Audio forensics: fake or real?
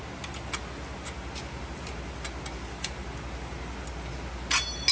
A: real